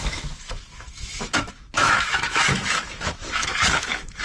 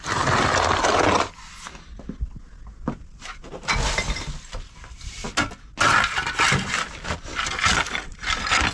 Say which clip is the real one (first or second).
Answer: second